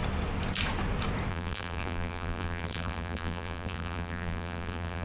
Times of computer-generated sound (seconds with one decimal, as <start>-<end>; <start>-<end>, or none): 1.3-5.0